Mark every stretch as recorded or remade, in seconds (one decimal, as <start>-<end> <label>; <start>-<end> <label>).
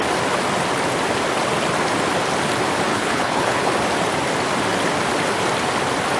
0.0-2.9 recorded; 2.9-3.7 remade; 3.7-6.2 recorded